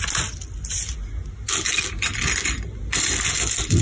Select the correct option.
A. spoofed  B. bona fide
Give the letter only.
B